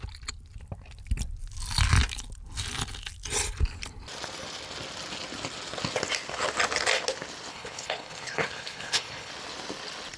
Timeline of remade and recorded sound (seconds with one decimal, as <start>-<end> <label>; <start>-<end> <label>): 0.0-7.5 recorded; 7.5-9.3 remade; 9.3-10.2 recorded